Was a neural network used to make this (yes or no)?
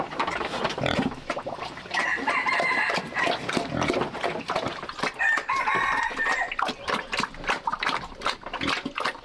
no